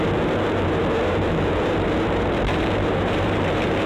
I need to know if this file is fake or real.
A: fake